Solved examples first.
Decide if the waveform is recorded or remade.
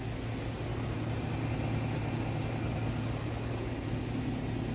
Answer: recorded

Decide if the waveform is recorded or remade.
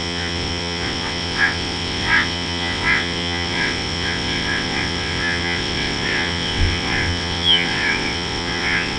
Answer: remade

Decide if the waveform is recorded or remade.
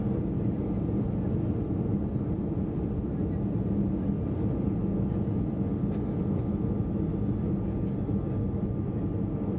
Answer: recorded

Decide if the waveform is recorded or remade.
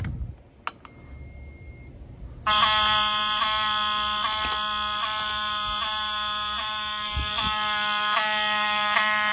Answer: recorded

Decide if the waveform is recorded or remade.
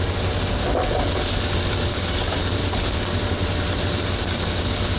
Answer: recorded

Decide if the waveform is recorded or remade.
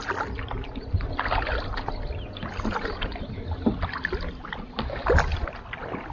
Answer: recorded